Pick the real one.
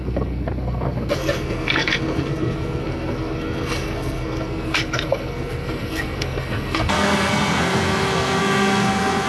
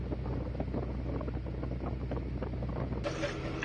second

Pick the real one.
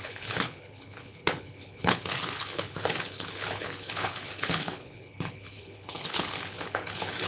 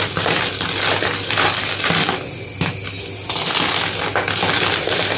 second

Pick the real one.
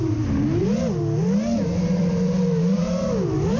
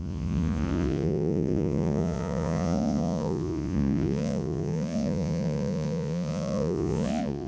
first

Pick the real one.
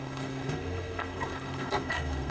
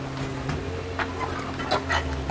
second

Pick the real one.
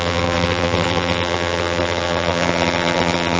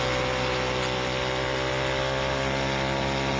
second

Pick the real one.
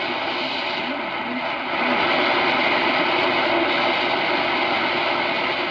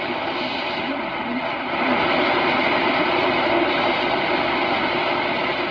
first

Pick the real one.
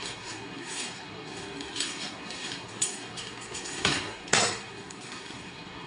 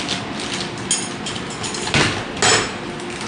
second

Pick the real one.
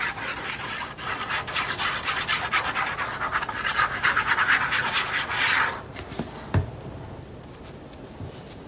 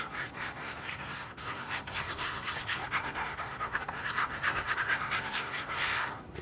first